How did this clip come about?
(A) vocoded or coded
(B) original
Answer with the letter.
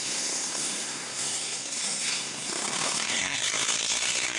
A